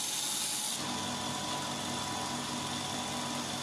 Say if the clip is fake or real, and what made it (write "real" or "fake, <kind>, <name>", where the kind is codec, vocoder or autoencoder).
real